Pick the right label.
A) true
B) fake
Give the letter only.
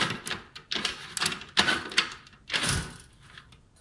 A